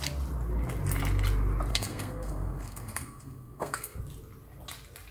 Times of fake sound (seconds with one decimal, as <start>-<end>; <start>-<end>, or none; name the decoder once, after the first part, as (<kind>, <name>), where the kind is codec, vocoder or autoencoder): 1.7-4.0 (codec, SNAC)